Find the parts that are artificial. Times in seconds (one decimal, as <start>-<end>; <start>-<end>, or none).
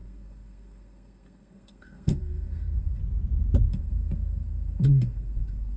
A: 0.0-3.0; 3.7-5.8